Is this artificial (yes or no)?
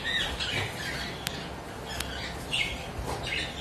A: no